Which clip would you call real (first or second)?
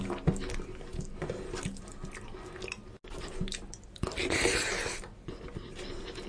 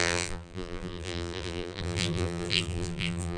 first